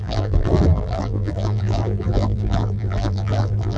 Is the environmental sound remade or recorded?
remade